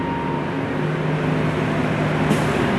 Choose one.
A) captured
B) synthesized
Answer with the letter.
A